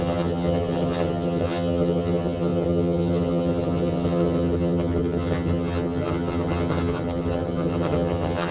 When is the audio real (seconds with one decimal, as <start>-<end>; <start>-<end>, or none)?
none